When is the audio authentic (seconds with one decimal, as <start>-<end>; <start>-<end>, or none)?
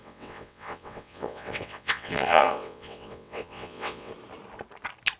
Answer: 4.1-5.2